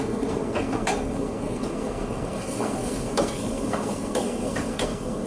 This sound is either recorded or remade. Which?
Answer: remade